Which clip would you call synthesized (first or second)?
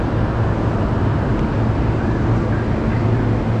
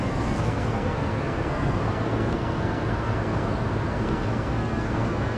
second